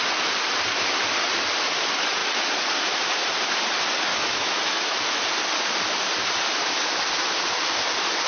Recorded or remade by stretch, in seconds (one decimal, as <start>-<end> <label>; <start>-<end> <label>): 0.0-4.1 recorded; 4.1-5.2 remade; 5.2-8.3 recorded